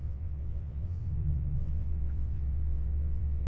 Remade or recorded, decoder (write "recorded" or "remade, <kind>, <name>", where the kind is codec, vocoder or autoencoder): remade, vocoder, WaveNeXt